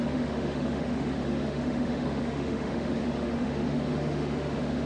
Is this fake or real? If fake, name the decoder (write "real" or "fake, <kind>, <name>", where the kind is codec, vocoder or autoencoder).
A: fake, autoencoder, DAC-VAE